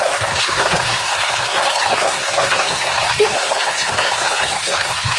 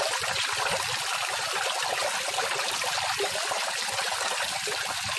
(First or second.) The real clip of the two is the second